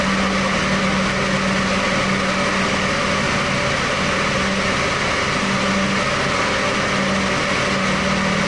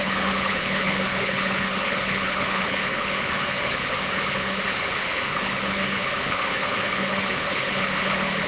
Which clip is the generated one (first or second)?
second